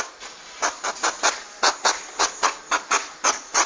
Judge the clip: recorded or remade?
recorded